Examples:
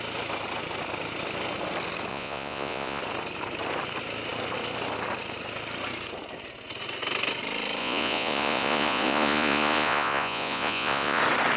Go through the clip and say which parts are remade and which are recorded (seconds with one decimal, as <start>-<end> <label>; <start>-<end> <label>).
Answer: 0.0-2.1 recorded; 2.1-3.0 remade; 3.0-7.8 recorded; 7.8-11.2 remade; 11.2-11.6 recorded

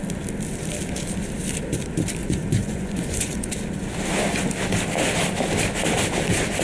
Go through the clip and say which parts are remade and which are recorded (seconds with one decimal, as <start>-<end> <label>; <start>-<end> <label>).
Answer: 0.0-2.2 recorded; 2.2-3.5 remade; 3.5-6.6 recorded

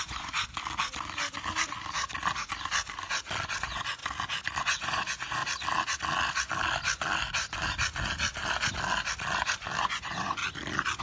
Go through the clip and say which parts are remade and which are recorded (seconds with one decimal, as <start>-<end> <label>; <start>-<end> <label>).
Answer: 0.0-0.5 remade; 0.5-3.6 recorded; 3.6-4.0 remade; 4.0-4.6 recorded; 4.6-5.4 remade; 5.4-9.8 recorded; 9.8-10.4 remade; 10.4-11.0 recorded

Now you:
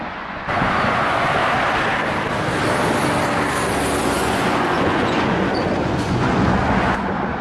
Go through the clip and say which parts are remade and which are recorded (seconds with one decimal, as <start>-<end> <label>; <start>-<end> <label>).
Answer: 0.0-1.4 remade; 1.4-4.0 recorded; 4.0-7.4 remade